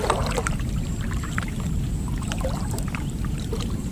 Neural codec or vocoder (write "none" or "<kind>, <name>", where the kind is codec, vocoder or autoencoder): vocoder, BigVGAN v2